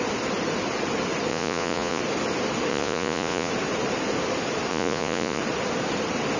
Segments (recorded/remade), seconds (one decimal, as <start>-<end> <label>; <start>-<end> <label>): 0.0-1.3 recorded; 1.3-2.0 remade; 2.0-2.7 recorded; 2.7-3.5 remade; 3.5-4.7 recorded; 4.7-5.4 remade; 5.4-6.4 recorded